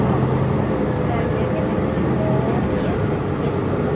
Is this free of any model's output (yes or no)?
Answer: yes